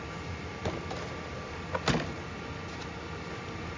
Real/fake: real